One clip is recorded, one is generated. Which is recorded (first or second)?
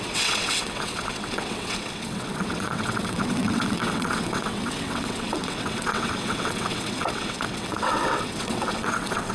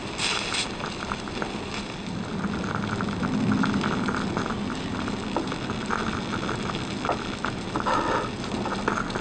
second